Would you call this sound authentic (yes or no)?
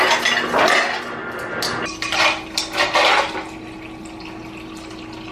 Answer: yes